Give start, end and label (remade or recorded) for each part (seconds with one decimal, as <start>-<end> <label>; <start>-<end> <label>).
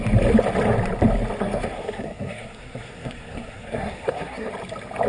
0.0-1.4 recorded; 1.4-4.5 remade; 4.5-5.1 recorded